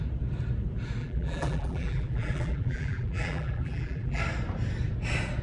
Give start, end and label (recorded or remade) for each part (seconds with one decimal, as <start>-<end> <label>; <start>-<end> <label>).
0.0-1.0 recorded; 1.0-4.2 remade; 4.2-5.4 recorded